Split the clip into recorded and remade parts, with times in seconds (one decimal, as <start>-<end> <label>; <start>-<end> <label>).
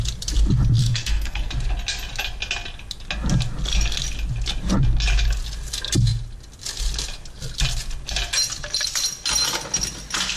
0.0-0.8 recorded; 0.8-1.5 remade; 1.5-10.4 recorded